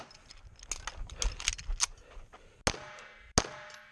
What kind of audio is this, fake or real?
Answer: real